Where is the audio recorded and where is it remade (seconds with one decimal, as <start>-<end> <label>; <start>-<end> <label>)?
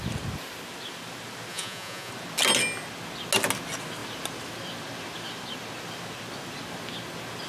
0.0-1.5 recorded; 1.5-2.1 remade; 2.1-7.5 recorded